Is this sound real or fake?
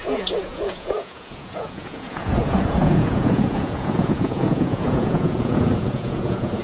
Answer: fake